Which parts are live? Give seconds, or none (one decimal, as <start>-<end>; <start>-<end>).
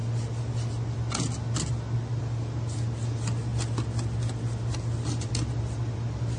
0.0-6.4